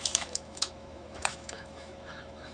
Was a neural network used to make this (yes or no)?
yes